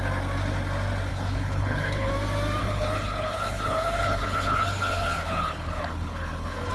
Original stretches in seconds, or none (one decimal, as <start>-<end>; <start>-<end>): 0.0-1.1; 2.1-2.6